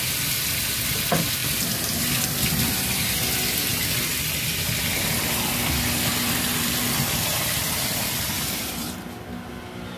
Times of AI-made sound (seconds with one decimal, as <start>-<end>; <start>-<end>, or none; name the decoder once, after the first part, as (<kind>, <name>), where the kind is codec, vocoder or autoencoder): none